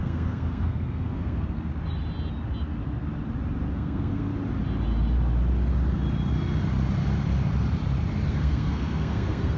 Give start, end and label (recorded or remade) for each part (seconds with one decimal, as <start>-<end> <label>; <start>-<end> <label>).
0.0-1.7 remade; 1.7-3.7 recorded; 3.7-4.3 remade; 4.3-8.3 recorded; 8.3-9.6 remade